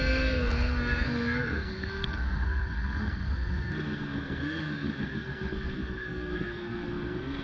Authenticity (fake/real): fake